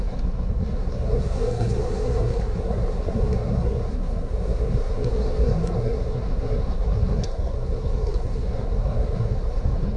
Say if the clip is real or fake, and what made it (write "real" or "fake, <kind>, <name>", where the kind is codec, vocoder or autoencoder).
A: fake, codec, SNAC